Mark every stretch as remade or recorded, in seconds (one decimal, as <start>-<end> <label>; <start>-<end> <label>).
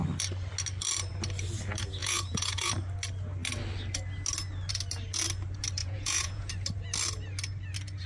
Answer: 0.0-2.0 recorded; 2.0-2.7 remade; 2.7-5.8 recorded; 5.8-6.5 remade; 6.5-8.1 recorded